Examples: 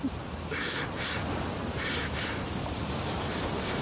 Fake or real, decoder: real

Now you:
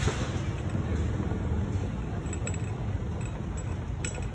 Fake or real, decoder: real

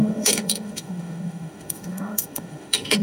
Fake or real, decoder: fake, autoencoder, DAC-VAE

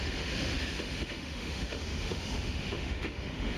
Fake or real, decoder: fake, autoencoder, DAC-VAE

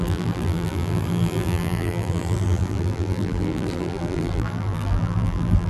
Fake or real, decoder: fake, vocoder, BigVGAN v2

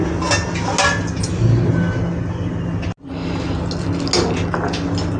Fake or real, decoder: real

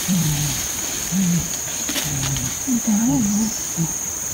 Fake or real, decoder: fake, vocoder, BigVGAN v2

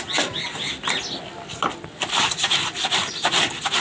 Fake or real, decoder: real